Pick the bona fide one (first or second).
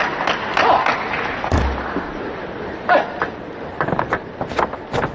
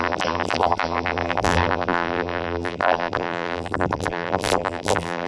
first